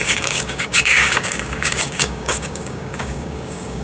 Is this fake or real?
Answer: fake